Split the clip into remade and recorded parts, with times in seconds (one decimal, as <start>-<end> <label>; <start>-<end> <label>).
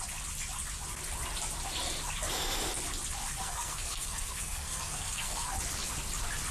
0.0-3.4 recorded; 3.4-5.5 remade; 5.5-6.5 recorded